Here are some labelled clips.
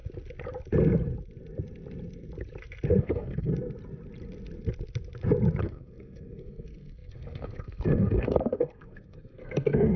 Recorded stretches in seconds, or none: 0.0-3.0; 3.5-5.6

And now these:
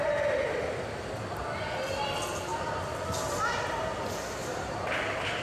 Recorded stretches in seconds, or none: 0.0-5.4

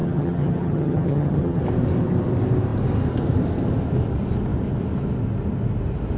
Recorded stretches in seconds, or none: 1.6-6.2